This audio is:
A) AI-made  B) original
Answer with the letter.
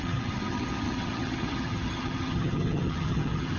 A